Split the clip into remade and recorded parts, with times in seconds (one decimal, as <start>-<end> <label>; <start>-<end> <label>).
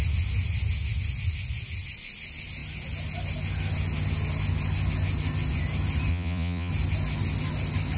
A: 0.0-6.1 recorded; 6.1-6.7 remade; 6.7-8.0 recorded